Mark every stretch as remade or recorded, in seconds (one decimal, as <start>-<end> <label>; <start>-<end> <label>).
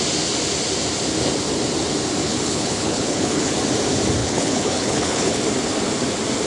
0.0-2.2 recorded; 2.2-3.5 remade; 3.5-4.2 recorded; 4.2-5.4 remade; 5.4-6.5 recorded